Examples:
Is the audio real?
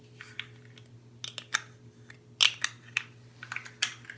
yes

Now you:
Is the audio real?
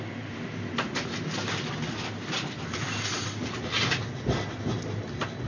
yes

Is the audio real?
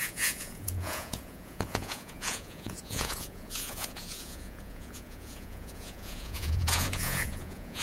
no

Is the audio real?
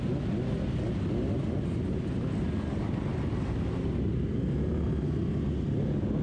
yes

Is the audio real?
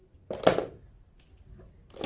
yes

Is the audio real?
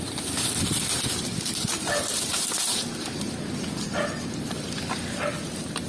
yes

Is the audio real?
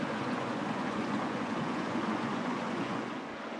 no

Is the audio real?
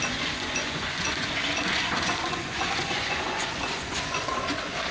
no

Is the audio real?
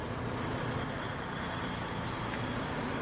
yes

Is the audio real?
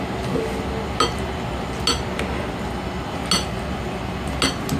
yes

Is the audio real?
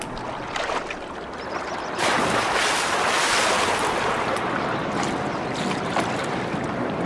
yes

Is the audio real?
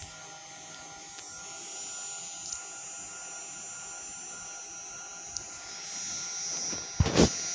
yes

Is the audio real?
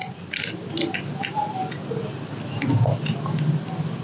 yes